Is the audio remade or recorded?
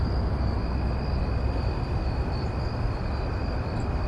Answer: recorded